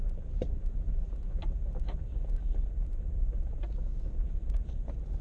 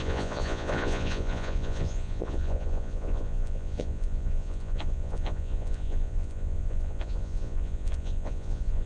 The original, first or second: first